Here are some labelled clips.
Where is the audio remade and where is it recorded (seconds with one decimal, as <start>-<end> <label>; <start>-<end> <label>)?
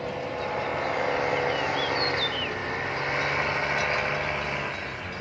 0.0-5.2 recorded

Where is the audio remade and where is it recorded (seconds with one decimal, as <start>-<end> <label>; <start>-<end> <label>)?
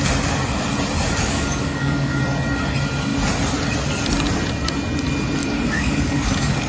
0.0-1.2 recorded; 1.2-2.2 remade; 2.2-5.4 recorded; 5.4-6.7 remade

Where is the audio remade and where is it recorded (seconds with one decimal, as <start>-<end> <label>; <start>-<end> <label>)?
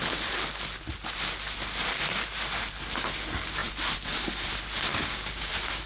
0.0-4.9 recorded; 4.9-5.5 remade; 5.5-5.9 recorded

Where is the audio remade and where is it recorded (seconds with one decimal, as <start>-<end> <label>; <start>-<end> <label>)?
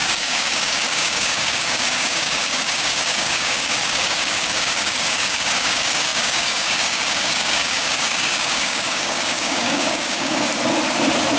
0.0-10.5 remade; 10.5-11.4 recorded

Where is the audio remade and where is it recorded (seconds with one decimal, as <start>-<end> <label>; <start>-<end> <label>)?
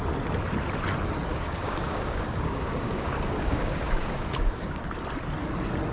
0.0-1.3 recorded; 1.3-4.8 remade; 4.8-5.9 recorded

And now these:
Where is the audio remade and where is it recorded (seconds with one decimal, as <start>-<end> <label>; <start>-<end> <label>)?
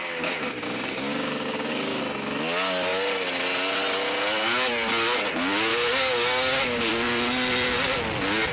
0.0-2.0 remade; 2.0-5.7 recorded; 5.7-6.9 remade; 6.9-8.5 recorded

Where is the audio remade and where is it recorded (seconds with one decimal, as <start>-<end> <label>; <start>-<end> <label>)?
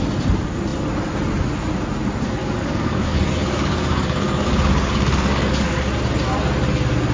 0.0-2.4 recorded; 2.4-5.8 remade; 5.8-7.1 recorded